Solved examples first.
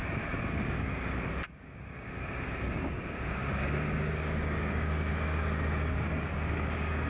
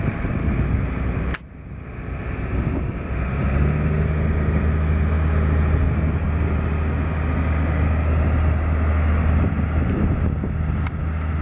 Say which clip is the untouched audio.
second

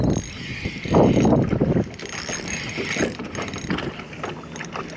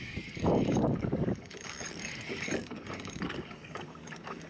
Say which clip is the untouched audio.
first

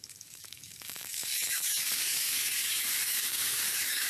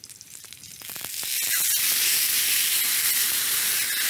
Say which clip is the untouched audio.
second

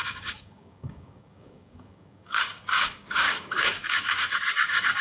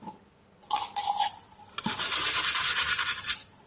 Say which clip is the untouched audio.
second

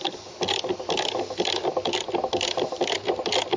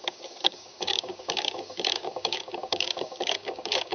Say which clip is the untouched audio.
first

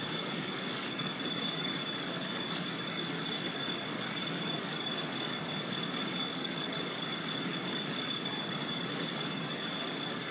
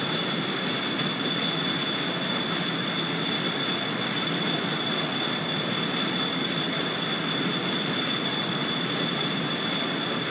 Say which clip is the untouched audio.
second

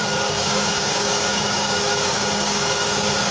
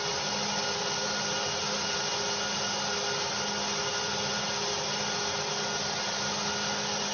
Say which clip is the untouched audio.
second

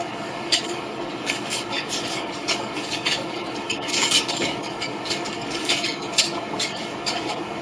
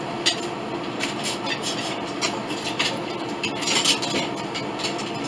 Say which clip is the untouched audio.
second